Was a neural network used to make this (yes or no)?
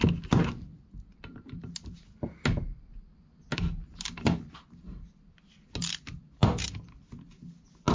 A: no